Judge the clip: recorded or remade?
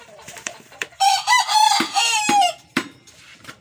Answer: remade